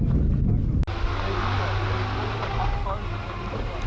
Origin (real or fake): real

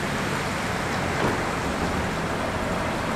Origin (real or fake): real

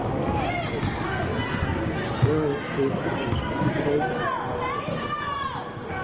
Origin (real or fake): real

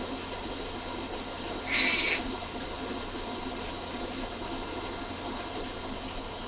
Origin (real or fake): real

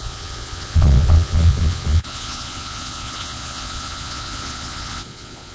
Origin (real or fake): fake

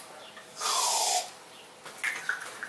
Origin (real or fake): real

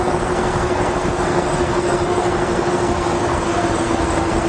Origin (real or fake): fake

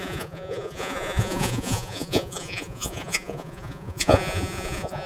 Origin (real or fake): fake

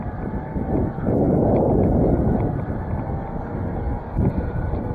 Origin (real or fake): real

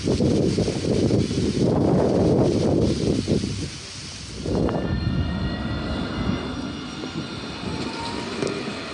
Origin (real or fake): real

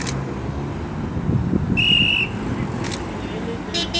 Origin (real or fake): real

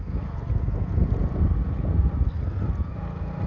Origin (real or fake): real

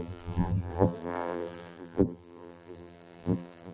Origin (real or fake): fake